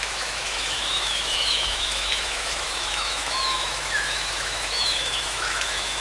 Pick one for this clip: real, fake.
fake